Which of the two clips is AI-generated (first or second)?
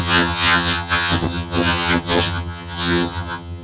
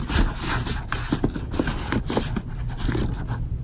first